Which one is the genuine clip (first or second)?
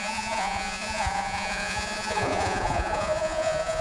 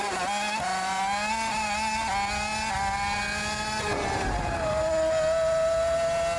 second